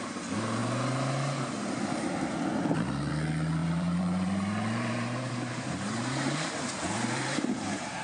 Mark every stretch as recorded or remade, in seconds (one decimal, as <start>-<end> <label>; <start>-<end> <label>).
0.0-3.6 recorded; 3.6-8.0 remade